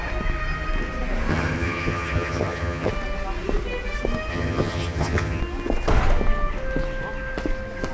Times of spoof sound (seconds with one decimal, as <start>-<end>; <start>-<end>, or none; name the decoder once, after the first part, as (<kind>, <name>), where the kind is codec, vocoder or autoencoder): 1.3-2.9 (vocoder, HiFi-GAN); 4.3-5.4